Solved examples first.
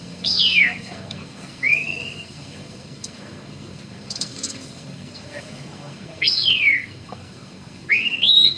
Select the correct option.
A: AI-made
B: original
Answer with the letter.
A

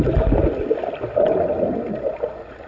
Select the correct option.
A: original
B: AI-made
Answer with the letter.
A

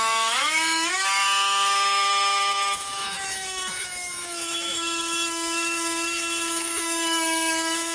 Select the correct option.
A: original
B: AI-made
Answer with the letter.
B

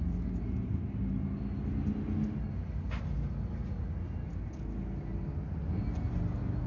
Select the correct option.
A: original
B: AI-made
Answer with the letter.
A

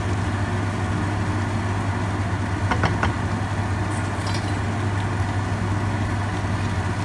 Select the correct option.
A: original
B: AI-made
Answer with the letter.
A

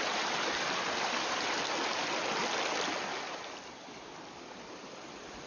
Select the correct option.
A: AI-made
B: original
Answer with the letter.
B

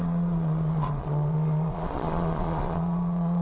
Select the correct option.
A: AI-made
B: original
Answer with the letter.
A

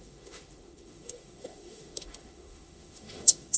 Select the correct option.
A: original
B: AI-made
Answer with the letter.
B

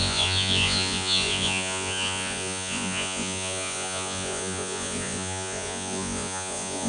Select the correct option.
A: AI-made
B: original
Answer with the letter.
A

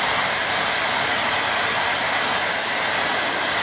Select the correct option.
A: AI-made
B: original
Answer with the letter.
B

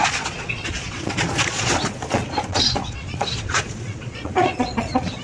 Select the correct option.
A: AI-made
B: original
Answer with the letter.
A